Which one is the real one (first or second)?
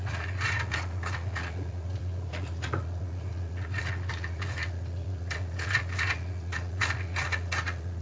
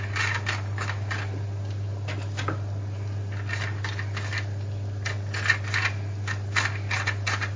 second